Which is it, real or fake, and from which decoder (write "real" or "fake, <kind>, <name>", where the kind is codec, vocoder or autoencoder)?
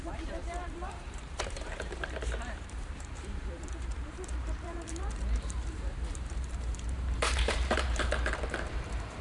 fake, vocoder, BigVGAN v2